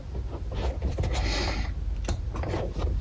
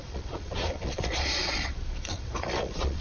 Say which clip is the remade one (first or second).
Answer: second